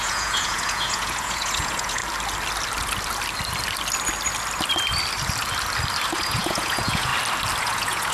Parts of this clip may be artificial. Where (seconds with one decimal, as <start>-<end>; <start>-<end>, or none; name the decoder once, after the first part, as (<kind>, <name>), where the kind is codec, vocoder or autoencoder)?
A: 0.0-2.0 (vocoder, Vocos); 6.1-7.1; 7.6-8.1

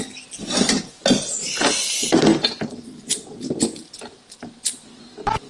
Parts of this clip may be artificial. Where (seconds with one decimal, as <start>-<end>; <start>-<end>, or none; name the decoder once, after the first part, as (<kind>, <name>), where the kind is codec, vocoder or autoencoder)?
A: 2.3-3.6 (vocoder, BigVGAN v2)

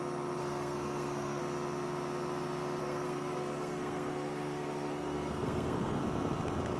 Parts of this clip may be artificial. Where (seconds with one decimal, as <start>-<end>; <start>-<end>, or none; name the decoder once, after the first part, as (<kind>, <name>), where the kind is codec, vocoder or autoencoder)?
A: 0.4-1.4 (codec, SNAC); 2.8-6.0

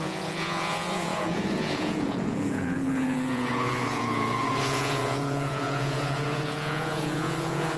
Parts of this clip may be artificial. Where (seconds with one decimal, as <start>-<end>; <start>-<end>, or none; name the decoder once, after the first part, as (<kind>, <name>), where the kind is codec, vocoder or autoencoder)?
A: 0.0-7.8 (vocoder, Vocos)

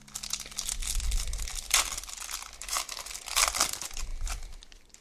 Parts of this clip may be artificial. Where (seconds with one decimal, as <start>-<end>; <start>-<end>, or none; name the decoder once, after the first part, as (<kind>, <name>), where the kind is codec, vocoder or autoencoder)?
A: none

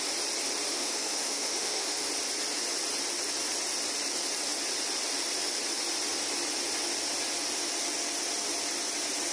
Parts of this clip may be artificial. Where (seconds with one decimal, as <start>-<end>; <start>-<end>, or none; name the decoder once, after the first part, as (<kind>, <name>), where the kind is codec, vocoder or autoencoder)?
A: 0.7-2.1 (autoencoder, DAC-VAE)

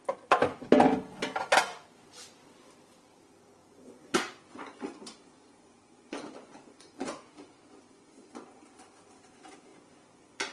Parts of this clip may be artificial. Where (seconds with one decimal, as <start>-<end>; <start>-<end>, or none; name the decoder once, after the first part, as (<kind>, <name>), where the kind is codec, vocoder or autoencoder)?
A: 3.6-8.8 (vocoder, Vocos); 9.7-10.5